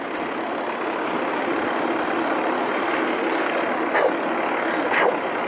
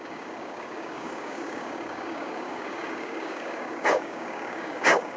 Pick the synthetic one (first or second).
second